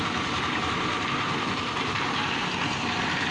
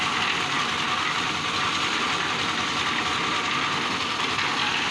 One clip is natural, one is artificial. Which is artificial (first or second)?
first